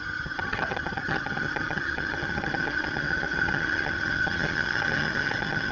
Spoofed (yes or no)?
yes